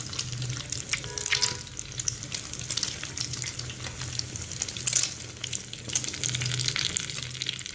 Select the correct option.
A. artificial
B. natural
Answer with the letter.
B